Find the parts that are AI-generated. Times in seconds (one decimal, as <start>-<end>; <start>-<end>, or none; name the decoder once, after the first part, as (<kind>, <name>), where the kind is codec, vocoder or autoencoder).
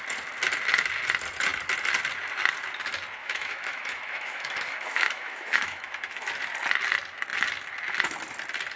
3.2-6.3 (autoencoder, DAC-VAE)